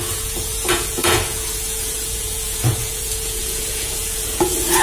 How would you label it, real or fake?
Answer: fake